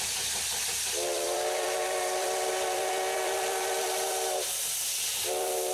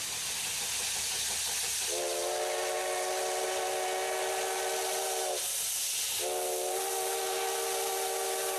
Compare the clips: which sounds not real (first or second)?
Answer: first